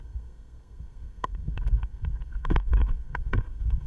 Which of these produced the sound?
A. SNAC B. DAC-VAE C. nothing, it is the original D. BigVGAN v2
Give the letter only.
A